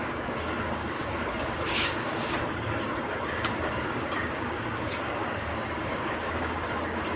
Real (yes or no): no